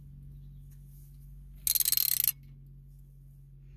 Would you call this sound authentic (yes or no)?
yes